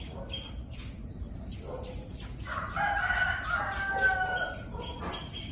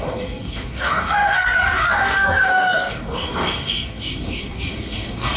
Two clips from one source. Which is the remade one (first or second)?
second